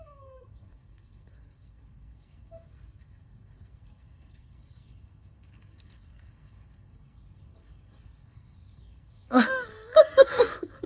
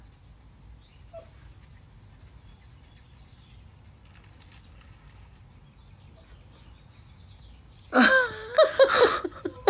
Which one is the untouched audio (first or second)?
second